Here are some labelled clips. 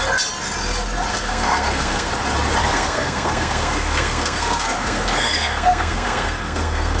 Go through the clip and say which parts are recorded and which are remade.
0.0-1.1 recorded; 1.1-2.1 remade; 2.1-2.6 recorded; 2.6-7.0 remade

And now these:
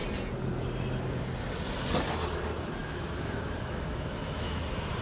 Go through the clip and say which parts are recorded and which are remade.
0.0-2.8 recorded; 2.8-4.6 remade; 4.6-5.0 recorded